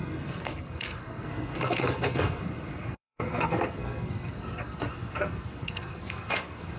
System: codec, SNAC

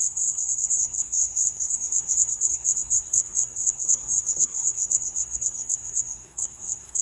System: codec, SNAC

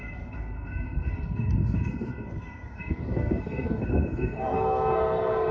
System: codec, SNAC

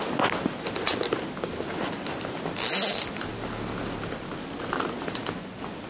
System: none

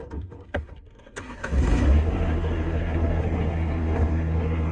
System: codec, SNAC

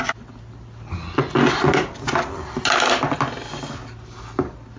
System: none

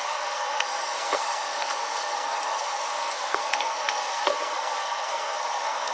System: codec, SNAC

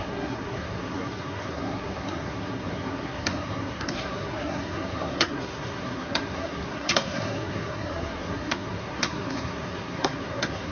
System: codec, SNAC